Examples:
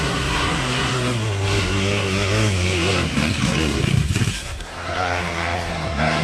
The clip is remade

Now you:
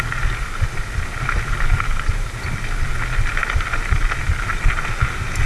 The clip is recorded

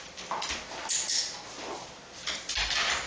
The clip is recorded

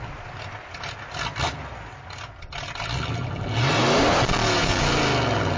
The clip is recorded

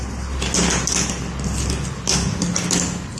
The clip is recorded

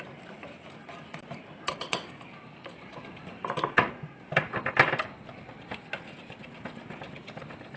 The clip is recorded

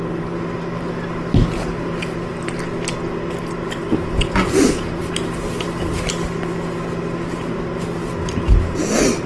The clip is recorded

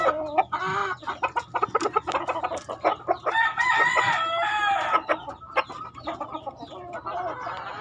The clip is recorded